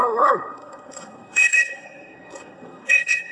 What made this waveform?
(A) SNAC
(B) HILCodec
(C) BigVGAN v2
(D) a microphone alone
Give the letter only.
A